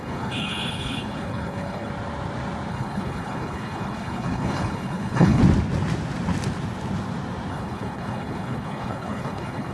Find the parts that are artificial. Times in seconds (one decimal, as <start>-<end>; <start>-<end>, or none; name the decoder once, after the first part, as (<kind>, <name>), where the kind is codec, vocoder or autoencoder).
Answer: 0.0-1.9 (codec, HILCodec); 2.7-5.4; 7.5-9.7